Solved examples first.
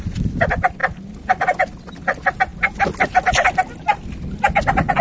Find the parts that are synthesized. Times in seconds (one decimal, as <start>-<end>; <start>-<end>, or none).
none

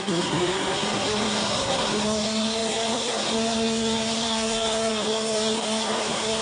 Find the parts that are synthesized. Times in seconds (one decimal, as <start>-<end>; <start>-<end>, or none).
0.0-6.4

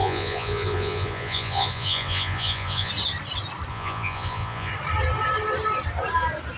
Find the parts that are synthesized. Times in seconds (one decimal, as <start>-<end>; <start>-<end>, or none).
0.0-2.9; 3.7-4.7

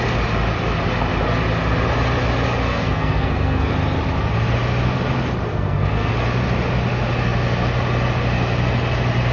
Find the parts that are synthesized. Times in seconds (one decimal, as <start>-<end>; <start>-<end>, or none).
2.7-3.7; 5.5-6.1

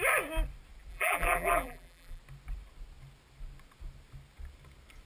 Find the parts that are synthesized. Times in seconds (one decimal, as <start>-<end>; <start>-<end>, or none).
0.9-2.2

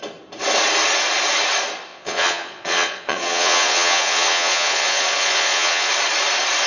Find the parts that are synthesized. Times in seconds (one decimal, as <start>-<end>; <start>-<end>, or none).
1.9-5.9